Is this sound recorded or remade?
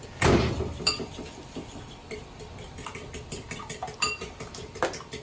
recorded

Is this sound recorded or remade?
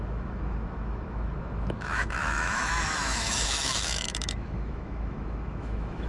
remade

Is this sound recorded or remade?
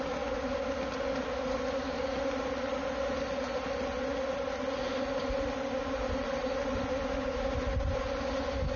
recorded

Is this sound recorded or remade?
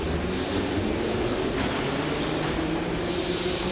recorded